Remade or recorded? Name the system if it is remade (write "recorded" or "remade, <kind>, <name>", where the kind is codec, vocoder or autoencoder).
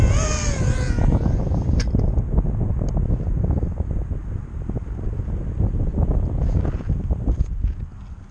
recorded